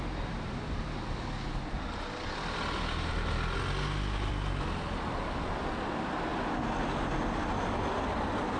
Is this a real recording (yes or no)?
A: yes